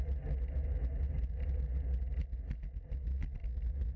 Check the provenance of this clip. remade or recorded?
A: recorded